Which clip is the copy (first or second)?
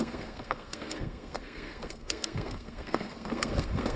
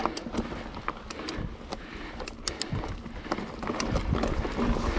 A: first